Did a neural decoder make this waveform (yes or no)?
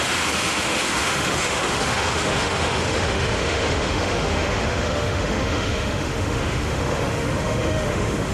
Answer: yes